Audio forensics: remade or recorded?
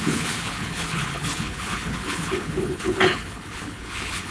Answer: remade